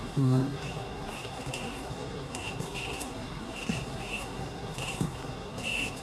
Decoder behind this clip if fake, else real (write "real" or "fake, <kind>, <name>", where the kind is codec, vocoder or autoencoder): fake, codec, SNAC